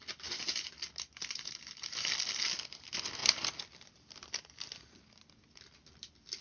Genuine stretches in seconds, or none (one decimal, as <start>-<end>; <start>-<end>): 0.0-6.4